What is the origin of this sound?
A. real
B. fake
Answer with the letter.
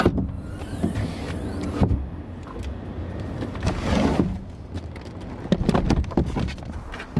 A